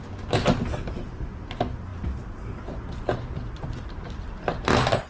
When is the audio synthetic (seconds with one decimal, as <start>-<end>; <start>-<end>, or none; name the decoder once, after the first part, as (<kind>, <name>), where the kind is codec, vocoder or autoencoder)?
none